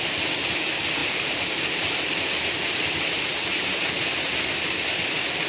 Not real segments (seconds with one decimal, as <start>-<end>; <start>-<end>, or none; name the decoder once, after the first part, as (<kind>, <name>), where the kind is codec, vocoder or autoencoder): 1.0-1.6 (vocoder, BigVGAN v2)